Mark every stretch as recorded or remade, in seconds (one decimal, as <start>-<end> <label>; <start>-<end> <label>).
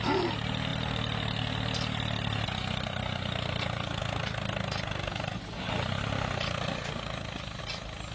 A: 0.0-8.1 recorded